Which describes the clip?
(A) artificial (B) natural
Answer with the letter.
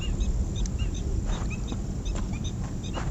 B